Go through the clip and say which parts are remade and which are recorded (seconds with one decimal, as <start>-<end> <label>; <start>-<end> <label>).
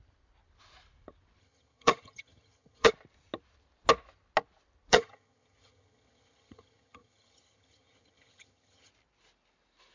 0.0-1.4 recorded; 1.4-2.9 remade; 2.9-4.9 recorded; 4.9-8.9 remade; 8.9-9.9 recorded